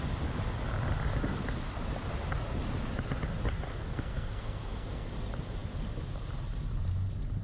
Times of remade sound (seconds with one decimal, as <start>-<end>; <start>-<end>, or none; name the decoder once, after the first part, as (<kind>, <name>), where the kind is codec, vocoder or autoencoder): 3.9-5.1 (codec, SNAC)